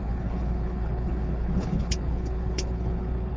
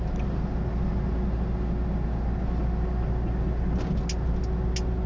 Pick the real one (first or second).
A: second